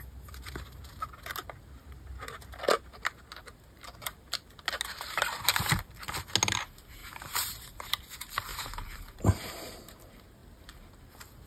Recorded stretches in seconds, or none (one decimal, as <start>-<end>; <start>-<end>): 0.0-7.0; 8.0-8.5; 9.6-11.5